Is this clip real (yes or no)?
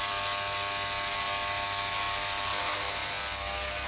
yes